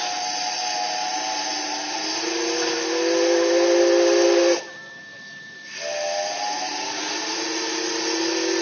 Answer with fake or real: real